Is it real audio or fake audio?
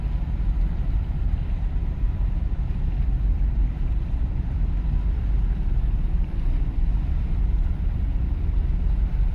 fake